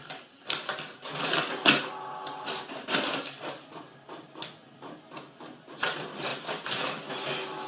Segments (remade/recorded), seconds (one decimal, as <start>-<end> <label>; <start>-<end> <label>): 0.0-3.8 remade; 3.8-6.3 recorded; 6.3-7.1 remade; 7.1-7.7 recorded